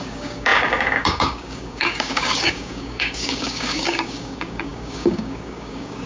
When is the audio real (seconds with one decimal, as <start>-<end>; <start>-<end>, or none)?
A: none